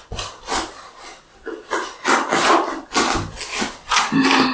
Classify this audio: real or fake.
real